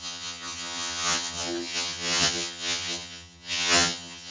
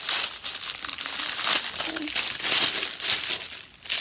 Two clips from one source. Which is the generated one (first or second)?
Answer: first